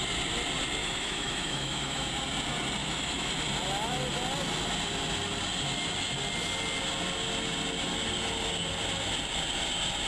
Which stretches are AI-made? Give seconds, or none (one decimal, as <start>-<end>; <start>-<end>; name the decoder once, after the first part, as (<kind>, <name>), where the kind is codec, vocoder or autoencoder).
0.8-2.1 (autoencoder, DAC-VAE); 2.8-3.3